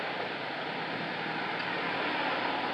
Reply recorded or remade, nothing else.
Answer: recorded